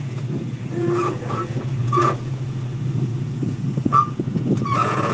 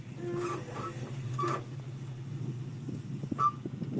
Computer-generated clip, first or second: first